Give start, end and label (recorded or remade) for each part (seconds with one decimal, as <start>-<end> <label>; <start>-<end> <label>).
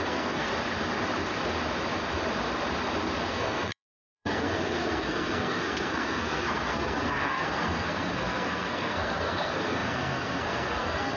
0.0-0.5 remade; 0.5-3.2 recorded; 3.2-11.2 remade